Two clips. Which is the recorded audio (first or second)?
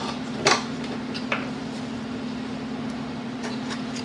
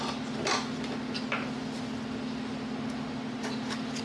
second